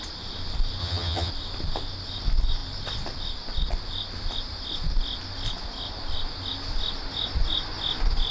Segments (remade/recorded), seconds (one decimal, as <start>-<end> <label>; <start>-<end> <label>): 0.0-0.8 recorded; 0.8-1.3 remade; 1.3-8.3 recorded